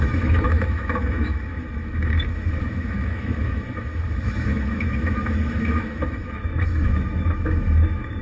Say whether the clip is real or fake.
fake